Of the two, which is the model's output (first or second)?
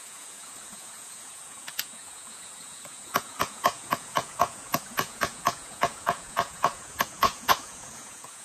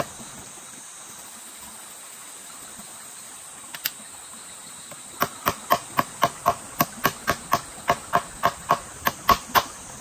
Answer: first